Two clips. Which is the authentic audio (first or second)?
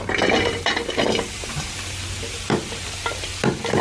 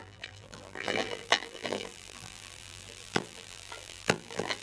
first